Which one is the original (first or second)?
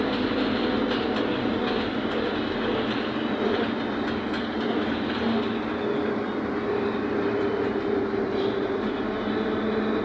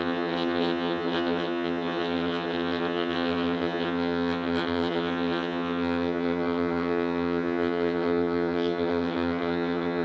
first